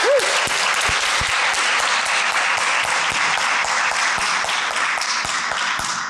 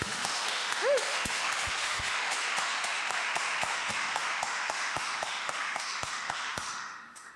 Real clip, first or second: first